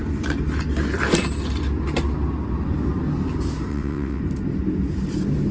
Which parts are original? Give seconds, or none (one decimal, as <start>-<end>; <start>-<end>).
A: 0.0-3.7; 4.2-5.5